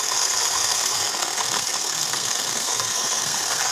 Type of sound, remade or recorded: remade